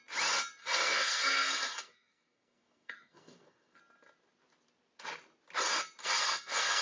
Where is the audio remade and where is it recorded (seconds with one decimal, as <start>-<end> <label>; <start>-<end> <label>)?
0.0-0.6 recorded; 0.6-3.8 remade; 3.8-6.0 recorded; 6.0-6.8 remade

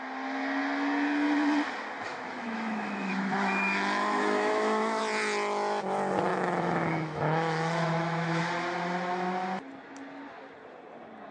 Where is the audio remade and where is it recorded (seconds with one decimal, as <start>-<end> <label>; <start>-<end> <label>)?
0.0-2.1 recorded; 2.1-5.0 remade; 5.0-6.3 recorded; 6.3-8.4 remade; 8.4-11.3 recorded